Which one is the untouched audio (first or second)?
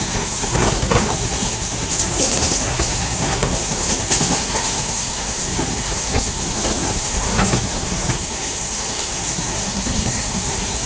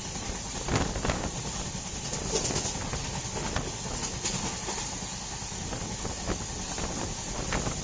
second